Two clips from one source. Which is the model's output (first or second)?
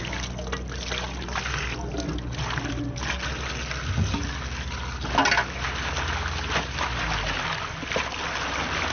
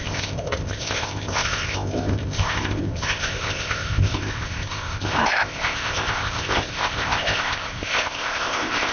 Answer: second